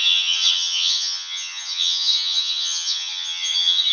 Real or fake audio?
fake